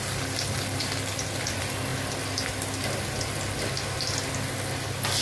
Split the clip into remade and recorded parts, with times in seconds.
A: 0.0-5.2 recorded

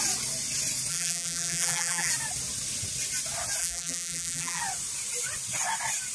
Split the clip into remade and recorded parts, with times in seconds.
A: 0.0-0.9 recorded; 0.9-2.1 remade; 2.1-3.6 recorded; 3.6-4.6 remade; 4.6-6.1 recorded

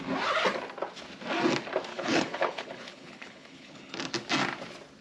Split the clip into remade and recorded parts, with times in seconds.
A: 0.0-1.9 recorded; 1.9-4.0 remade; 4.0-5.0 recorded

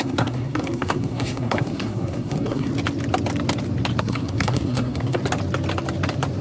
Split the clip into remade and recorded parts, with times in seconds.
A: 0.0-2.7 remade; 2.7-4.0 recorded; 4.0-5.2 remade; 5.2-6.4 recorded

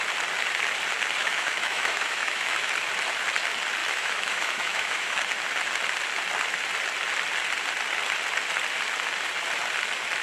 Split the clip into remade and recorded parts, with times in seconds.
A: 0.0-1.2 recorded; 1.2-2.7 remade; 2.7-3.8 recorded; 3.8-5.3 remade; 5.3-10.2 recorded

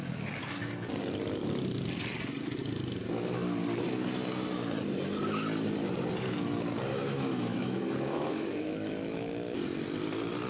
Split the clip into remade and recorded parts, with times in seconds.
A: 0.0-6.9 recorded; 6.9-9.6 remade; 9.6-10.5 recorded

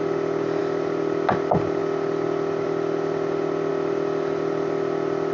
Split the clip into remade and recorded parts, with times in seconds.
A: 0.0-5.3 recorded